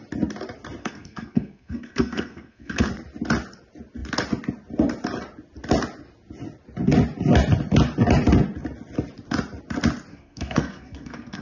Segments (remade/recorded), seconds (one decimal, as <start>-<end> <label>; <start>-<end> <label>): 0.0-0.8 recorded; 0.8-2.9 remade; 2.9-10.1 recorded; 10.1-11.4 remade